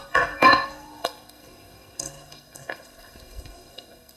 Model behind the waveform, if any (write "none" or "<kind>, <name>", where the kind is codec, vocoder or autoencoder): codec, SNAC